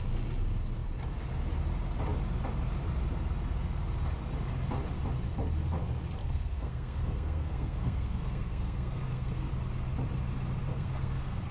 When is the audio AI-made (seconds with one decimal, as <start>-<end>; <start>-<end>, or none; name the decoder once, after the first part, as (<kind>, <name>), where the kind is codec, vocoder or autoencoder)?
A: 6.2-9.5 (codec, SNAC); 10.7-11.5